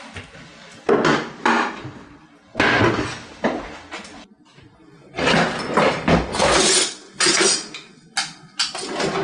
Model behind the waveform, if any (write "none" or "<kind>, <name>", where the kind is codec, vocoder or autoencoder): none